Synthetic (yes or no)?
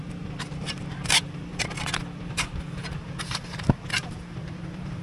yes